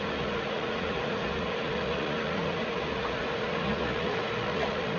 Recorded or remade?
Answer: remade